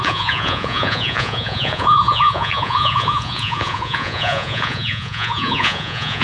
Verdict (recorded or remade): remade